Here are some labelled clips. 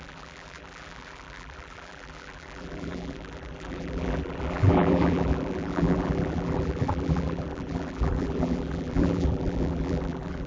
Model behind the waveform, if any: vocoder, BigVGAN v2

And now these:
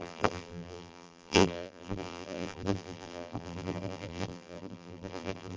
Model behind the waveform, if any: vocoder, BigVGAN v2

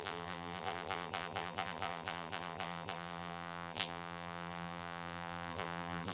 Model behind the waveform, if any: vocoder, BigVGAN v2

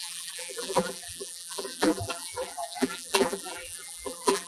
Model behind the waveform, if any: vocoder, BigVGAN v2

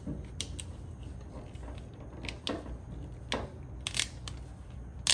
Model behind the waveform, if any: none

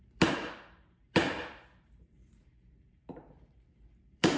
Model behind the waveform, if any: vocoder, BigVGAN v2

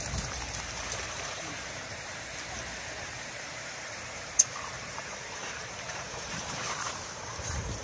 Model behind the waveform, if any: vocoder, BigVGAN v2